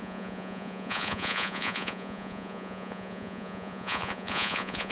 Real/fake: fake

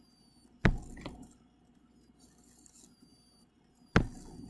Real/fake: real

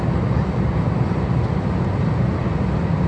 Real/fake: real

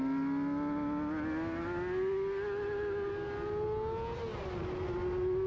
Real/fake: real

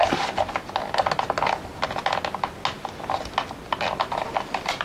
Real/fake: real